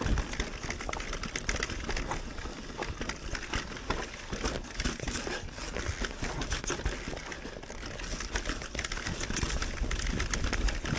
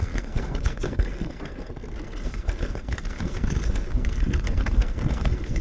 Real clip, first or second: first